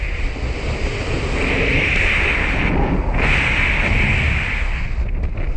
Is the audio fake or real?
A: real